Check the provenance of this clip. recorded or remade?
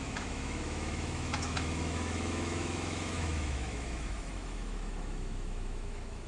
remade